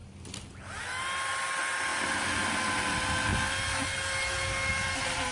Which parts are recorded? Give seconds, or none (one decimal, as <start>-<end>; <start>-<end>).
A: 0.0-5.3